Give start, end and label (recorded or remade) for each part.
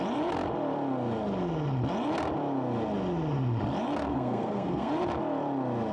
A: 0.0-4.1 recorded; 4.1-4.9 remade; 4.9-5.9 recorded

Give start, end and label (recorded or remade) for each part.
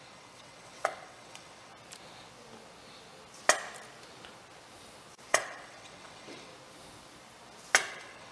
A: 0.0-1.7 remade; 1.7-5.3 recorded; 5.3-6.5 remade; 6.5-7.9 recorded; 7.9-8.3 remade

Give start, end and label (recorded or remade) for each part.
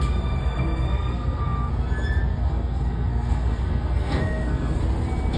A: 0.0-0.4 recorded; 0.4-1.7 remade; 1.7-2.3 recorded; 2.3-4.8 remade; 4.8-5.4 recorded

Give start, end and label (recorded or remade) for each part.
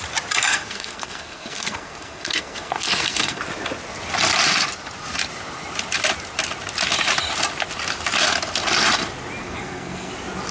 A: 0.0-0.4 recorded; 0.4-3.4 remade; 3.4-9.4 recorded; 9.4-10.1 remade; 10.1-10.5 recorded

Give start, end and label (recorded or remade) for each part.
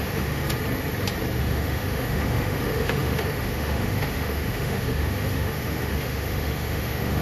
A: 0.0-0.4 remade; 0.4-1.4 recorded; 1.4-7.2 remade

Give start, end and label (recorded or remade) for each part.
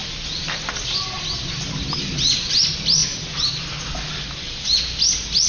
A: 0.0-5.5 recorded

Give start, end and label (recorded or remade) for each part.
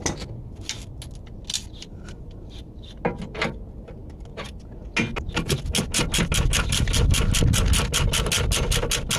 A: 0.0-9.2 recorded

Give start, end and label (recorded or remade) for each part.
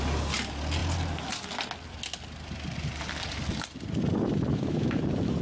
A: 0.0-4.5 recorded; 4.5-5.0 remade; 5.0-5.4 recorded